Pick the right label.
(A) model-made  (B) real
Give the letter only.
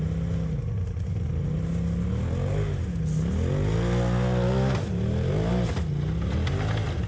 B